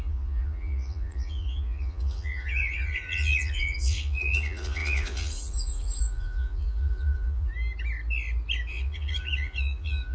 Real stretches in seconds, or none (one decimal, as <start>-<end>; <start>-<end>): 7.5-8.7